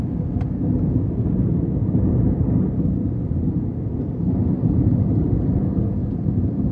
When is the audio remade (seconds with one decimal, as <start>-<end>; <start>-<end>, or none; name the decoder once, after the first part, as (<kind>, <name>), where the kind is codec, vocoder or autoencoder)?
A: none